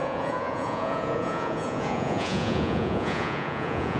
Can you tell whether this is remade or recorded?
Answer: remade